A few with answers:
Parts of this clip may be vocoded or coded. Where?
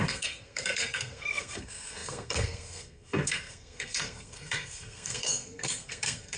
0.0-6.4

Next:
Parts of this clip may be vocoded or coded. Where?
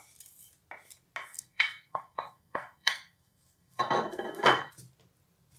1.3-4.7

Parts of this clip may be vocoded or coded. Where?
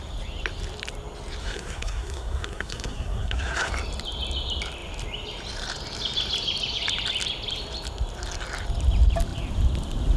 1.4-3.7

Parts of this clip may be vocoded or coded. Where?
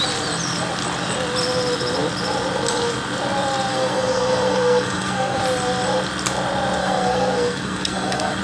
3.7-5.4; 6.8-8.4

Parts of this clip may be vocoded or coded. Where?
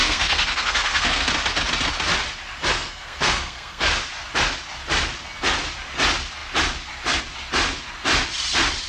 0.0-1.3; 2.7-3.9